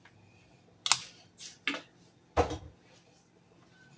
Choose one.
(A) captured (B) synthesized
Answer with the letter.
A